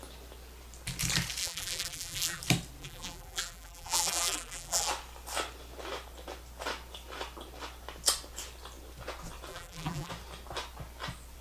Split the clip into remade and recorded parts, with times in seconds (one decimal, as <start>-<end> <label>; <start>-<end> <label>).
0.0-1.4 recorded; 1.4-2.4 remade; 2.4-2.8 recorded; 2.8-4.9 remade; 4.9-9.5 recorded; 9.5-10.1 remade; 10.1-11.4 recorded